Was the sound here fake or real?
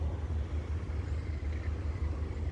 real